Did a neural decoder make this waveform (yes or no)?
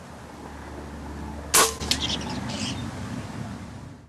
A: no